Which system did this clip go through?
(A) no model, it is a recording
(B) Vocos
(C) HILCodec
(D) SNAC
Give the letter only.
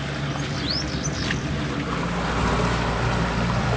A